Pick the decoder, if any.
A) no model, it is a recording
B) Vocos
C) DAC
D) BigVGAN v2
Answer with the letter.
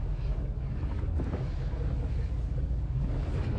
C